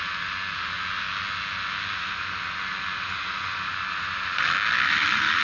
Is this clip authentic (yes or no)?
yes